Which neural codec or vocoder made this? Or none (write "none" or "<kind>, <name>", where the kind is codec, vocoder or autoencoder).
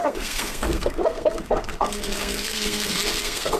codec, SNAC